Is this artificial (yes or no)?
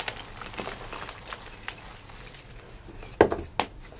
no